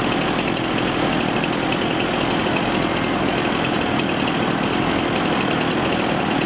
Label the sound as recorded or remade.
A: recorded